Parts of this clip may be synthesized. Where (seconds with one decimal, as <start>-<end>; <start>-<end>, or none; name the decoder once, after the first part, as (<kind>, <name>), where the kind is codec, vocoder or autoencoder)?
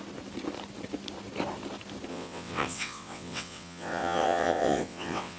2.1-5.4 (vocoder, WaveNeXt)